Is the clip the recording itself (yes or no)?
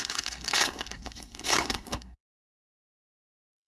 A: no